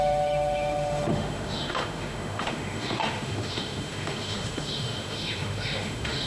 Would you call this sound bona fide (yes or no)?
no